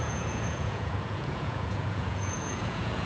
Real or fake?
fake